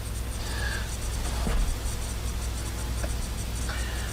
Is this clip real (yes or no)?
yes